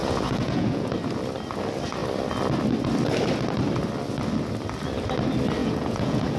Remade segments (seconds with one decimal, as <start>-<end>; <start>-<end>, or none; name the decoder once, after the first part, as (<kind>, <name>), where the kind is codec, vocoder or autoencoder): 0.0-0.9 (vocoder, Vocos); 5.6-6.4